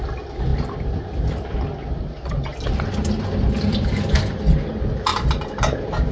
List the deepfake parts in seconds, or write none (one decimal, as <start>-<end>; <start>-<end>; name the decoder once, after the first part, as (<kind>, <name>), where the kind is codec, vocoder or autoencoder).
none